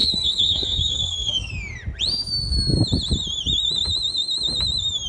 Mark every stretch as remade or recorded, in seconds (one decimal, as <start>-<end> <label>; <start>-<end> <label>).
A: 0.0-1.5 remade; 1.5-5.1 recorded